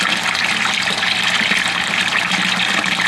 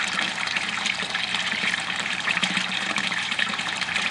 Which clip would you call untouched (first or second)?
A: first